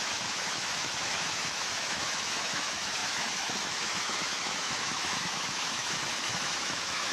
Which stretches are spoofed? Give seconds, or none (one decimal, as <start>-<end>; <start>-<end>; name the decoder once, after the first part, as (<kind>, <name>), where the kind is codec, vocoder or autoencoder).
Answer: 0.0-7.1 (autoencoder, DAC-VAE)